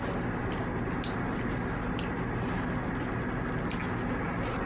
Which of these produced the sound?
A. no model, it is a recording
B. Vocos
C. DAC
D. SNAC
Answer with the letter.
A